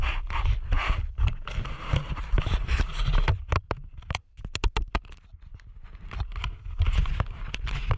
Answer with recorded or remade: recorded